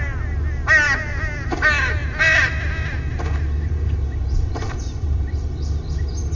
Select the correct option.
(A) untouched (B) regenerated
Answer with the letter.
A